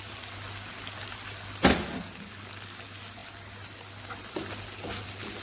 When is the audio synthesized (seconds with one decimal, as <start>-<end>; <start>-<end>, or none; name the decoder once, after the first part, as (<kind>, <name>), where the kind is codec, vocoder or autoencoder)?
none